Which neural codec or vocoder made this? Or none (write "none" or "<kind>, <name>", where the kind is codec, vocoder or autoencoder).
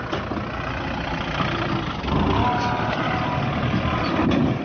none